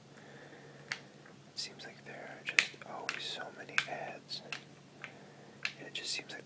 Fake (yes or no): no